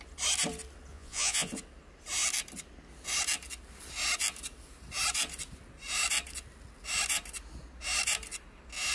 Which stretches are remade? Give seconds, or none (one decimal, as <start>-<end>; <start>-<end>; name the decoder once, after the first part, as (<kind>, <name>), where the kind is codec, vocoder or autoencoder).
0.9-1.5 (vocoder, Vocos)

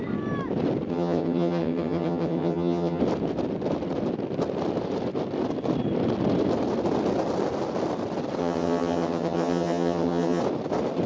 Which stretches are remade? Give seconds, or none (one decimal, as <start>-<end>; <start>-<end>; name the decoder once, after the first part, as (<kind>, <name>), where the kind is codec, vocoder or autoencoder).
0.9-3.0 (vocoder, HiFi-GAN); 8.4-10.4

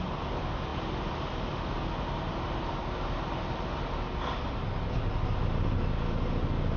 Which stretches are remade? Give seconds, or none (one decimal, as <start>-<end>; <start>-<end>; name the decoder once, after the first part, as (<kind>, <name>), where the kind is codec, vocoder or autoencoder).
none

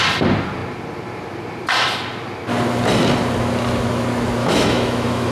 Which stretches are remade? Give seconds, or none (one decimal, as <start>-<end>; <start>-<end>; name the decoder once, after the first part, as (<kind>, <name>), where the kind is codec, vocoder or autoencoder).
4.4-5.3 (autoencoder, DAC-VAE)